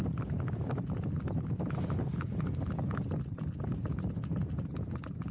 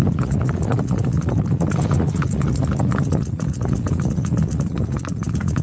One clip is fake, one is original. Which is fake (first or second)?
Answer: second